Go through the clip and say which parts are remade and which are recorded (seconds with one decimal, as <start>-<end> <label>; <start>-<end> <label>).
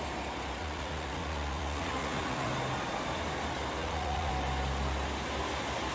0.0-0.6 recorded; 0.6-2.5 remade; 2.5-3.8 recorded; 3.8-4.3 remade; 4.3-5.9 recorded